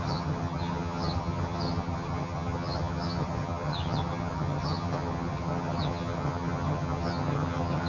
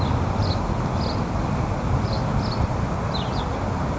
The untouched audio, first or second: second